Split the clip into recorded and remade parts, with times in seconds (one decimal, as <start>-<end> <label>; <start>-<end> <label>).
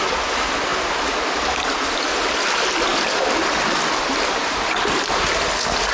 0.0-5.9 recorded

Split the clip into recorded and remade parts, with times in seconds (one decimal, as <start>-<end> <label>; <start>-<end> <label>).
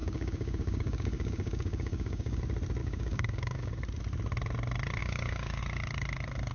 0.0-2.4 remade; 2.4-2.8 recorded; 2.8-3.7 remade; 3.7-5.0 recorded; 5.0-5.6 remade; 5.6-6.5 recorded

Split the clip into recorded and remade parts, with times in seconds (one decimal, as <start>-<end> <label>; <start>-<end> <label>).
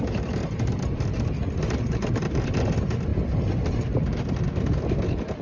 0.0-0.4 recorded; 0.4-2.5 remade; 2.5-5.4 recorded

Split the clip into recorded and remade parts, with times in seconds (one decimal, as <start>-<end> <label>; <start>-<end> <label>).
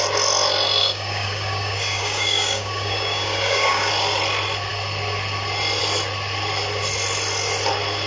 0.0-0.8 recorded; 0.8-3.9 remade; 3.9-8.1 recorded